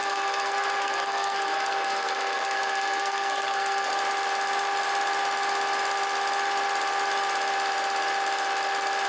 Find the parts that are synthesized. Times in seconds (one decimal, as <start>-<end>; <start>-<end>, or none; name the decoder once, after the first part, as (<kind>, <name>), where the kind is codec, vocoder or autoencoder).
0.0-3.9 (codec, SNAC)